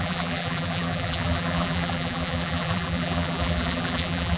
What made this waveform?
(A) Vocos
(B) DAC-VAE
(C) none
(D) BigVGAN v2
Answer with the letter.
D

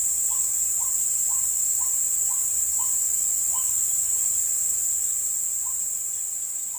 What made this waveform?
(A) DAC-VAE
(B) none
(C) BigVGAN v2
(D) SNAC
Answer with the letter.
C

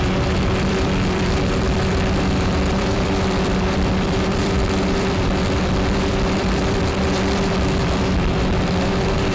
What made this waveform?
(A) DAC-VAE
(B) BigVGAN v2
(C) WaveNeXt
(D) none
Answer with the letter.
B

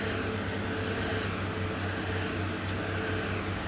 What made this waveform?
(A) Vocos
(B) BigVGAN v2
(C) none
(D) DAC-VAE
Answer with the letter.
C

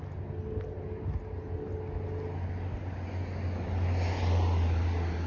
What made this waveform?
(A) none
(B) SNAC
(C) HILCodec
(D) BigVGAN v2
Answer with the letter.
A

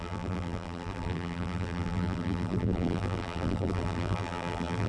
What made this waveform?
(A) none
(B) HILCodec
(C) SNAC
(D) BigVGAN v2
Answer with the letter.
D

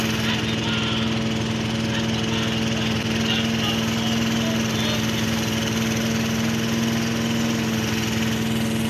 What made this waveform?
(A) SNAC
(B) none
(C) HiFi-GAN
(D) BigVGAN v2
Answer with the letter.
B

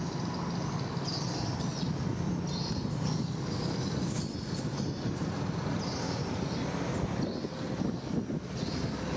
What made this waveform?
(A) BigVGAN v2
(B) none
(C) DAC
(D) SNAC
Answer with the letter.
B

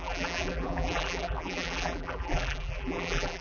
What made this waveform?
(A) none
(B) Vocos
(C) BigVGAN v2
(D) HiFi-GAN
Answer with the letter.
C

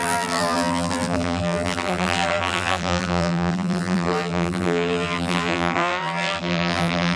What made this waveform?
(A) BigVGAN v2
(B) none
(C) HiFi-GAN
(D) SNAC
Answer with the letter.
A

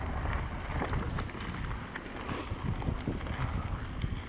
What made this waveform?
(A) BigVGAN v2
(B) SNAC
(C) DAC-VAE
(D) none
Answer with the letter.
D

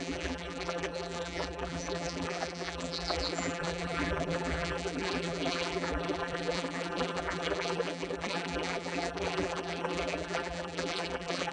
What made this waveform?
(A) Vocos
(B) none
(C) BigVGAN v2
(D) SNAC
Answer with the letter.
C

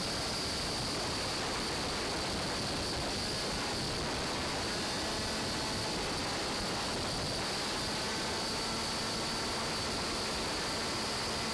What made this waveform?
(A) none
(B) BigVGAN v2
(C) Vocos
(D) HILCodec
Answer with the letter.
A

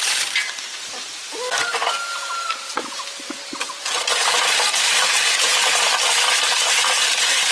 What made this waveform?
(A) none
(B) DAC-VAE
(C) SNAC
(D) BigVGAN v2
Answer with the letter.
D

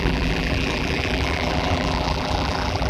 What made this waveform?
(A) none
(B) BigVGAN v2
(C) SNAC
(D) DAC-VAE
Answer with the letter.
B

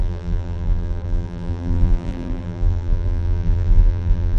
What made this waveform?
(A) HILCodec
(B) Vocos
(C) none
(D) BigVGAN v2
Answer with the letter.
D